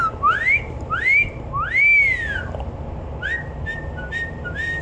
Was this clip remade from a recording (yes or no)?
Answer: no